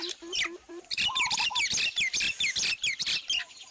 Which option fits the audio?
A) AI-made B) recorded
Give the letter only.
A